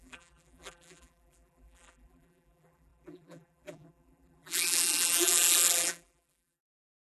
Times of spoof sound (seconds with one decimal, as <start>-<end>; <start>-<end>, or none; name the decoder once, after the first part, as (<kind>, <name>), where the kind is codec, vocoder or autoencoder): 0.0-7.0 (vocoder, BigVGAN v2)